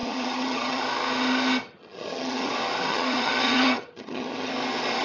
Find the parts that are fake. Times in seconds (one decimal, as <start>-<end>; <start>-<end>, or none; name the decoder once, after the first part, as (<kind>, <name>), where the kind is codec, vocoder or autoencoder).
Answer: 0.0-0.8 (vocoder, HiFi-GAN); 1.6-2.5; 2.9-4.5